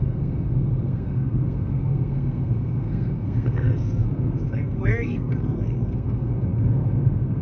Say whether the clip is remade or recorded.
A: remade